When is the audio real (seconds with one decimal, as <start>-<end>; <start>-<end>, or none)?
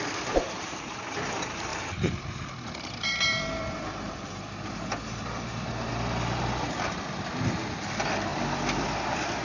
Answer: none